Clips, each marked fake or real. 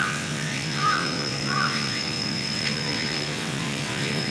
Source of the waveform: fake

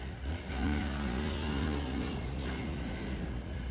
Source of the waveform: fake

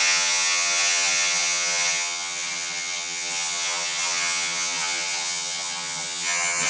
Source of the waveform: fake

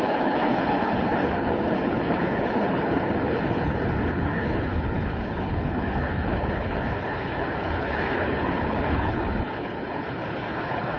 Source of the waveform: fake